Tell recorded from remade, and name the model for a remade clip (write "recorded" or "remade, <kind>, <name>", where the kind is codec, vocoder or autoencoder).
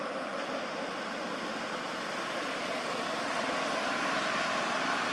recorded